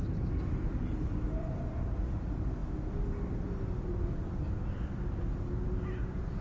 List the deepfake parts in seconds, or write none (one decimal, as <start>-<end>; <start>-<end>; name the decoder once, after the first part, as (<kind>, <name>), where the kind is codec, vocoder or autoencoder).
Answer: none